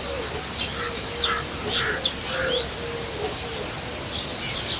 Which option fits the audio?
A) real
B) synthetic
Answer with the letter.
A